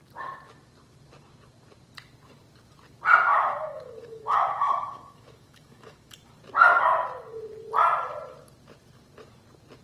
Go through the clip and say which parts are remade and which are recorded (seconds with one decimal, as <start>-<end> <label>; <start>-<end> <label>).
0.0-3.3 recorded; 3.3-6.1 remade; 6.1-9.8 recorded

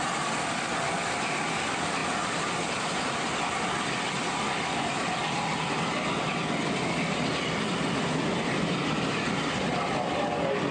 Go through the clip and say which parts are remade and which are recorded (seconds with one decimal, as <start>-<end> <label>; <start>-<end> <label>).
0.0-10.7 recorded

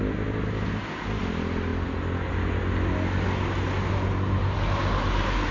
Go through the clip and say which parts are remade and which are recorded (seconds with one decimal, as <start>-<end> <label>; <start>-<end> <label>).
0.0-1.7 recorded; 1.7-2.3 remade; 2.3-5.5 recorded

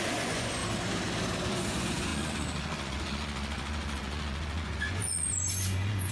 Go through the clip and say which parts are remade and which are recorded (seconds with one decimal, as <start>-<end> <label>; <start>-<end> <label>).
0.0-0.6 remade; 0.6-1.5 recorded; 1.5-6.1 remade

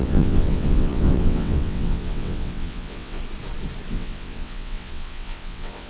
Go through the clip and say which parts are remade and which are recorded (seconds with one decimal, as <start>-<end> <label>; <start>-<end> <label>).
0.0-3.2 remade; 3.2-3.9 recorded; 3.9-5.9 remade

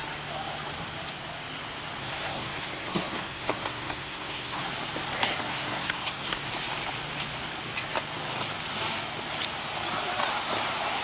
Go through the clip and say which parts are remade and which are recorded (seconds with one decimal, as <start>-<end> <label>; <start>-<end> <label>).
0.0-2.0 recorded; 2.0-4.7 remade; 4.7-5.4 recorded; 5.4-6.4 remade; 6.4-11.0 recorded

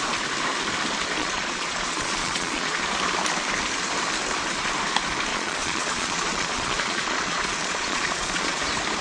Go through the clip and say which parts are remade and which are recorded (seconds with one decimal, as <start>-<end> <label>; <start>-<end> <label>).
0.0-1.2 recorded; 1.2-2.8 remade; 2.8-5.3 recorded; 5.3-8.6 remade; 8.6-9.0 recorded